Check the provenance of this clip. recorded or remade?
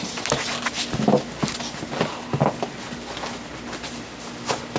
recorded